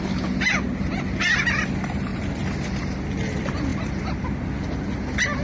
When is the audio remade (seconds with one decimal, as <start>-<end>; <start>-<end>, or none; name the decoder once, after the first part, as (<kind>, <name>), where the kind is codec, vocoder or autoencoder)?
none